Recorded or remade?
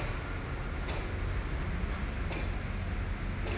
recorded